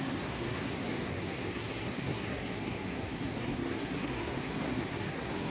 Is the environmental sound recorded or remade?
remade